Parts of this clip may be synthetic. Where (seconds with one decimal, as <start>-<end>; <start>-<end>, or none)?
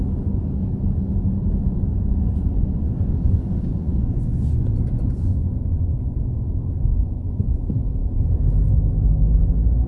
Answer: 1.6-6.2; 6.9-7.6